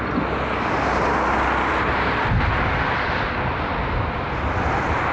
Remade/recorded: recorded